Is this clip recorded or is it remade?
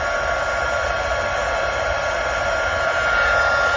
recorded